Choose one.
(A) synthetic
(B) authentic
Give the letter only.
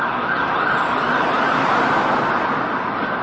B